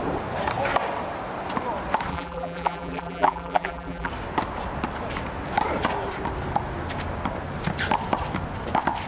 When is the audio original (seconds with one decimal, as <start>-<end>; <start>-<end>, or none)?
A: 0.0-2.1; 4.1-9.1